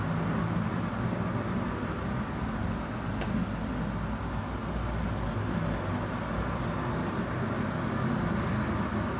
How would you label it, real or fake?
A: real